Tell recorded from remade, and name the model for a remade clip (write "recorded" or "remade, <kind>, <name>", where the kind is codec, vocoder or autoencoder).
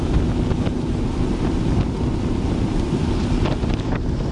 recorded